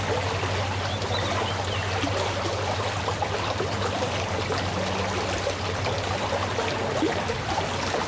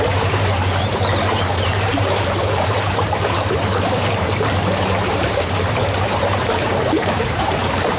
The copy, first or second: second